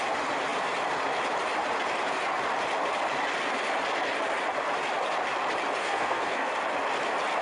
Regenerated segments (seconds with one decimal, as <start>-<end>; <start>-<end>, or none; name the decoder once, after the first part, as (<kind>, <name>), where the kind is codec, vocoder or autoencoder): 5.8-6.5 (codec, SNAC)

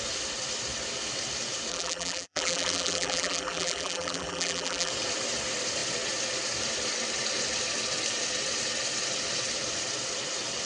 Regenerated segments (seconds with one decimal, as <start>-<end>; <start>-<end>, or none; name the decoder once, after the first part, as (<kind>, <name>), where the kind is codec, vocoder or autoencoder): 1.7-4.9 (vocoder, BigVGAN v2)

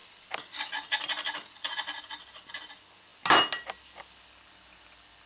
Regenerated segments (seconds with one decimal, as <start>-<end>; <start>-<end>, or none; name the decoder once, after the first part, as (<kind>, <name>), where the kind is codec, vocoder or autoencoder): none

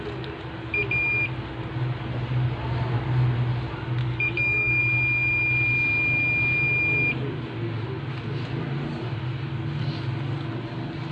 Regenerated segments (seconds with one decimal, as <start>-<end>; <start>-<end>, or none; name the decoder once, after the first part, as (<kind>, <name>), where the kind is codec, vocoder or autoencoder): 4.0-4.8 (codec, DAC)